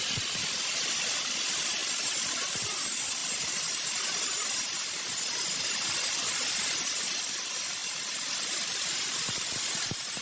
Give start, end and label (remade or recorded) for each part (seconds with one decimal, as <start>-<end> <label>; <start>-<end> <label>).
0.0-10.2 recorded